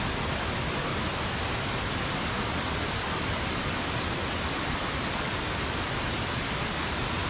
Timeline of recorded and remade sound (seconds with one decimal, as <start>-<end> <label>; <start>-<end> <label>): 0.0-7.3 recorded